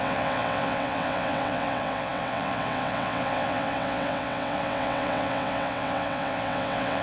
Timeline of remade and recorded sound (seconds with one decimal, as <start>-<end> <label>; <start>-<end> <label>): 0.0-7.0 remade